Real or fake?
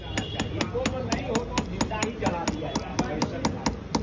real